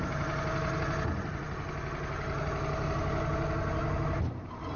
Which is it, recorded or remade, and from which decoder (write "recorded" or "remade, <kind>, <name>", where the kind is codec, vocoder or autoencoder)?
recorded